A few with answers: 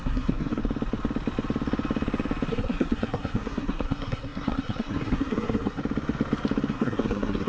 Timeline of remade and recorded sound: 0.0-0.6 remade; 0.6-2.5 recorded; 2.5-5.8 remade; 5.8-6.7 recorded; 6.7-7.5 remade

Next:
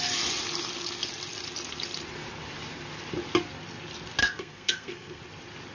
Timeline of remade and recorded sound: 0.0-4.2 recorded; 4.2-5.2 remade; 5.2-5.7 recorded

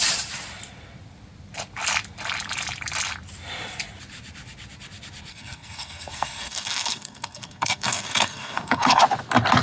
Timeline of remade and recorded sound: 0.0-5.3 recorded; 5.3-9.0 remade; 9.0-9.6 recorded

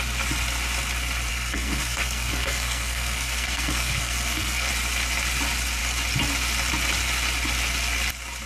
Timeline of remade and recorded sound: 0.0-1.3 recorded; 1.3-4.7 remade; 4.7-8.5 recorded